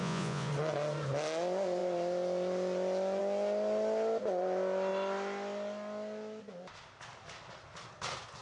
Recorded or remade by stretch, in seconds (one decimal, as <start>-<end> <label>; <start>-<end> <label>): 0.0-0.5 remade; 0.5-8.4 recorded